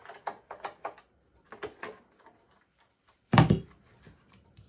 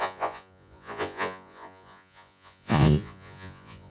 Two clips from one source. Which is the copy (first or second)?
second